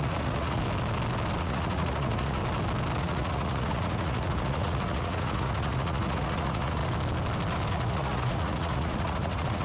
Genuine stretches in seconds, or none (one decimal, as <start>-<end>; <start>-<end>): 0.6-1.4; 2.4-3.0; 6.8-7.7